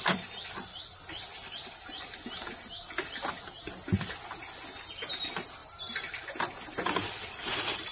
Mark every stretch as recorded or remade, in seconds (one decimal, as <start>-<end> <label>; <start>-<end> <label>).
0.0-7.9 recorded